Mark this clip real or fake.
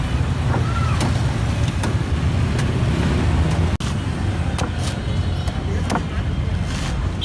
real